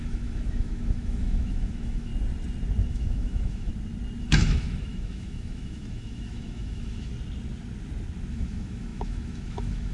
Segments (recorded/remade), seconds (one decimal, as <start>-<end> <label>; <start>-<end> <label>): 0.0-2.1 remade; 2.1-2.8 recorded; 2.8-3.7 remade; 3.7-4.2 recorded; 4.2-7.1 remade; 7.1-8.3 recorded; 8.3-9.9 remade